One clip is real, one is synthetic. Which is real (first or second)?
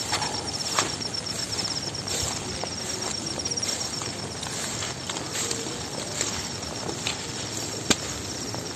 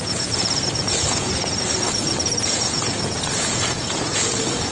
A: first